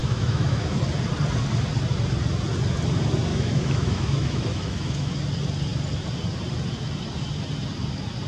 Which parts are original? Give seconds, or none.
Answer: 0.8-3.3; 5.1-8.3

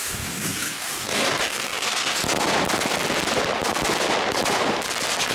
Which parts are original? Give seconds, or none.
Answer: 2.2-5.3

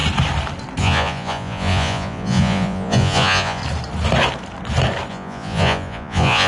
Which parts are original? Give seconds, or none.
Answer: 0.0-0.8; 3.6-5.1